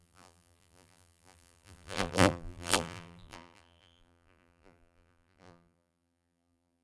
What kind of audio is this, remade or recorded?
remade